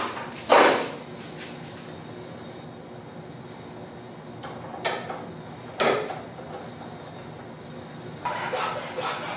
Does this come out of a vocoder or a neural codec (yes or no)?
no